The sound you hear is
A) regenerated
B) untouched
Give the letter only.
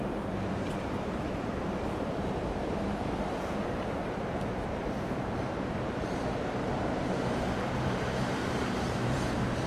A